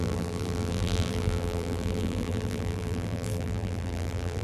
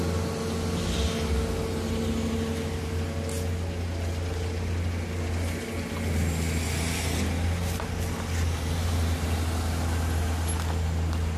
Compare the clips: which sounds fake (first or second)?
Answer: first